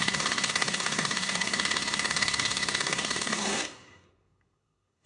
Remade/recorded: remade